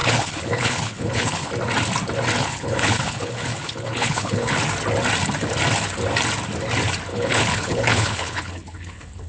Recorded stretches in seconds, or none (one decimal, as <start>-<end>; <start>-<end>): 1.5-2.4; 4.6-7.1